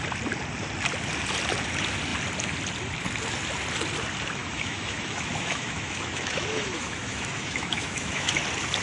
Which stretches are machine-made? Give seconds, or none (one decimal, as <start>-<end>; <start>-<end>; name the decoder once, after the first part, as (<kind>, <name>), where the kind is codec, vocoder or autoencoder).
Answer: 4.4-8.3 (autoencoder, DAC-VAE)